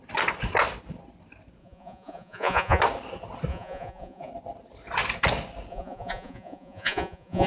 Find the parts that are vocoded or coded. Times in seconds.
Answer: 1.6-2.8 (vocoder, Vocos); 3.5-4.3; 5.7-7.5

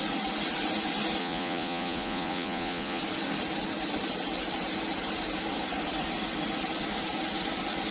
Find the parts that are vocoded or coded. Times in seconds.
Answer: 1.2-3.0 (vocoder, Vocos)

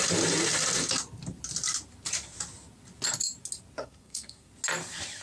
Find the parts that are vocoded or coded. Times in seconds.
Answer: 3.8-4.5 (codec, SNAC)

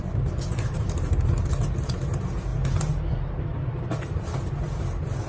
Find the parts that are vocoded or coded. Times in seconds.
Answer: none

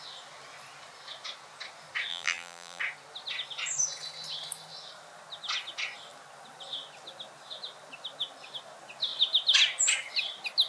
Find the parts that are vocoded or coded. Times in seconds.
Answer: 2.1-2.8 (vocoder, BigVGAN v2)

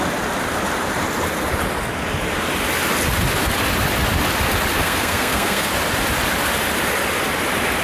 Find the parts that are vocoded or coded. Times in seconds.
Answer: 4.8-5.7 (codec, SNAC)

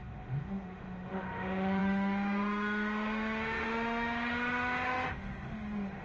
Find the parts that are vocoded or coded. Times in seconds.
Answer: 0.0-6.0 (autoencoder, DAC-VAE)